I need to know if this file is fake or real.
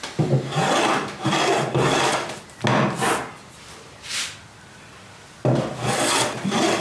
real